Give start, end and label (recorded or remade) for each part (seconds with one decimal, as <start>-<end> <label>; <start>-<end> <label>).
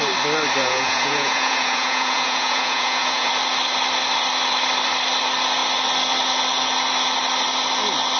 0.0-0.6 recorded; 0.6-3.3 remade; 3.3-8.2 recorded